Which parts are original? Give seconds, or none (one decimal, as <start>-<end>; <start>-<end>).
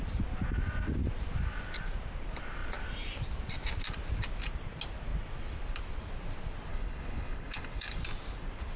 0.0-6.7; 8.0-8.8